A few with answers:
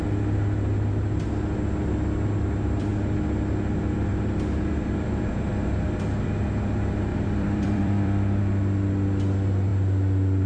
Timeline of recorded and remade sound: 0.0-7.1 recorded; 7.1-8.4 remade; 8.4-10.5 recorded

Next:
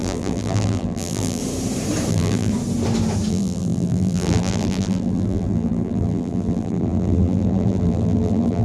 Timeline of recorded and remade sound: 0.0-1.4 remade; 1.4-2.1 recorded; 2.1-2.5 remade; 2.5-3.3 recorded; 3.3-8.6 remade

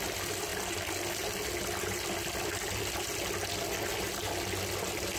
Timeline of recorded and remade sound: 0.0-5.2 recorded

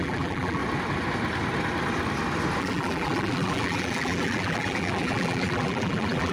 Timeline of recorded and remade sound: 0.0-0.6 remade; 0.6-2.6 recorded; 2.6-6.3 remade

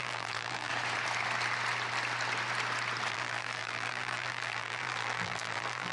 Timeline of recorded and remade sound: 0.0-0.7 remade; 0.7-3.1 recorded; 3.1-5.9 remade